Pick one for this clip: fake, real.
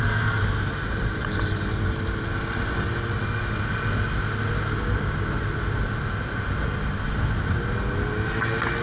real